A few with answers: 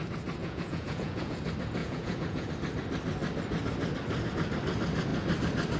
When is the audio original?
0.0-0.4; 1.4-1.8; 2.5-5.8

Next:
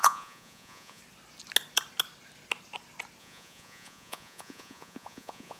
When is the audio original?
1.0-3.2

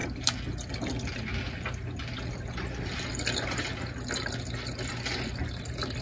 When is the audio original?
0.0-6.0

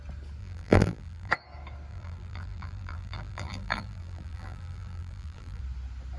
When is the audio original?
0.0-0.4; 1.3-1.9; 5.6-6.2

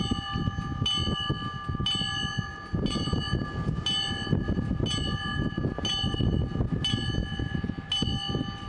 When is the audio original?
0.0-8.7